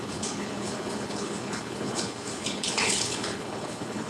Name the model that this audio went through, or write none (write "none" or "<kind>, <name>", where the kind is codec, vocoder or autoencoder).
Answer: codec, HILCodec